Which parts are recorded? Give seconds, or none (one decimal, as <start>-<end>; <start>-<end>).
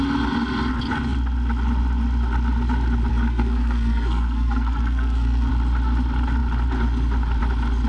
0.0-3.1; 5.5-7.9